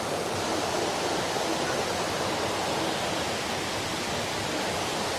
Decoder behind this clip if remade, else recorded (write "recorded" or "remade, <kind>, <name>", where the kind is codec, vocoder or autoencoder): recorded